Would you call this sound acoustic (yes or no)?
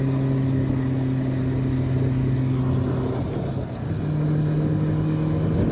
yes